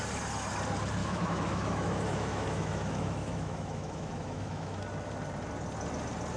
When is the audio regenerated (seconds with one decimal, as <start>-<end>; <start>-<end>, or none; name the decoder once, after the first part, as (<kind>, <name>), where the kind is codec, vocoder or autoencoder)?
1.0-4.8 (autoencoder, DAC-VAE)